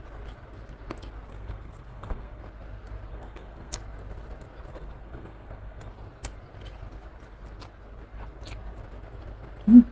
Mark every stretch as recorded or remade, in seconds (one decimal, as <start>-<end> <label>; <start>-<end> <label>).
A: 0.0-1.3 recorded; 1.3-2.4 remade; 2.4-3.1 recorded; 3.1-3.7 remade; 3.7-4.7 recorded; 4.7-5.9 remade; 5.9-9.9 recorded